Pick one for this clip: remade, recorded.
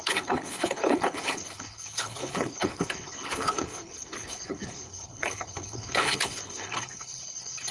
remade